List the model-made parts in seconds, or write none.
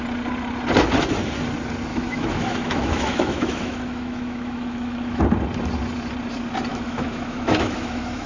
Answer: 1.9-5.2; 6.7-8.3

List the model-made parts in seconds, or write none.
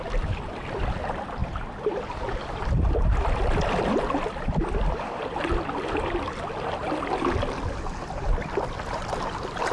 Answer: none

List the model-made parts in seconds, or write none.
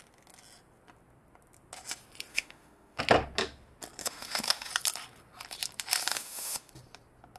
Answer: 2.3-3.0; 4.0-4.7; 6.1-6.7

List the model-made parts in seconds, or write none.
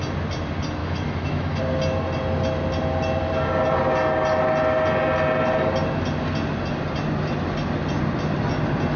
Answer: 0.8-1.6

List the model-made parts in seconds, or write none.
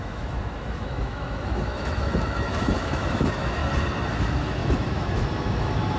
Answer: 0.0-3.6; 4.1-6.0